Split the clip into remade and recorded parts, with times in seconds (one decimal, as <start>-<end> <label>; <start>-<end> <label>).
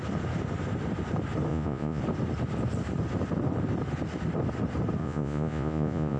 0.0-1.5 recorded; 1.5-2.0 remade; 2.0-5.0 recorded; 5.0-6.2 remade